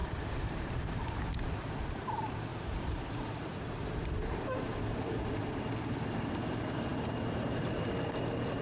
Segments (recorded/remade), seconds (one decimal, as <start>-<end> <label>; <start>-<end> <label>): 0.0-1.0 remade; 1.0-2.5 recorded; 2.5-3.0 remade; 3.0-3.5 recorded; 3.5-5.7 remade; 5.7-8.6 recorded